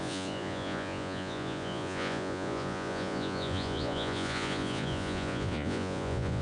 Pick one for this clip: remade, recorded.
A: remade